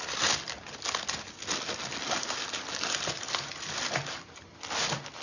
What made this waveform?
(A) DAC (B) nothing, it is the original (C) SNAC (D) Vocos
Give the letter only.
B